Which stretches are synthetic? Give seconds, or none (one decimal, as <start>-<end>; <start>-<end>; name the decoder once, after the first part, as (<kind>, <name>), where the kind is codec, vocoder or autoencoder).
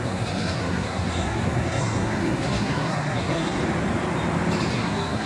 0.0-3.6 (codec, SNAC); 4.7-5.3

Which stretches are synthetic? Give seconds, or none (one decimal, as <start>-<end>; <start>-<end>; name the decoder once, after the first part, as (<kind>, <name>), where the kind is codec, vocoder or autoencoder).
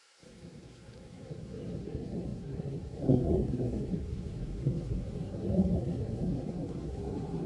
0.0-7.5 (codec, SNAC)